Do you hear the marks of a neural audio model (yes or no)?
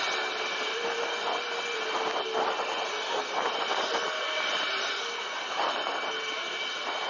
no